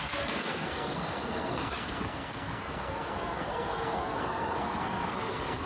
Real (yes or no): no